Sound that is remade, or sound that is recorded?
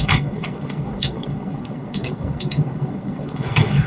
remade